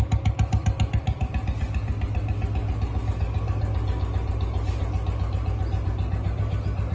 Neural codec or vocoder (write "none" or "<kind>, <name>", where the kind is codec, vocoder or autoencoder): none